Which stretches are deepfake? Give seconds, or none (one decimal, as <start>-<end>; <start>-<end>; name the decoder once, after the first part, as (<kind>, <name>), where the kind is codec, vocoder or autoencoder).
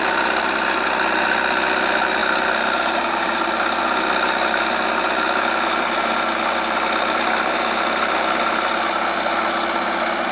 none